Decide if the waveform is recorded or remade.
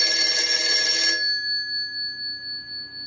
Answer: recorded